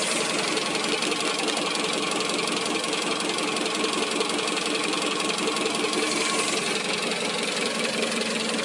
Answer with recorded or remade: recorded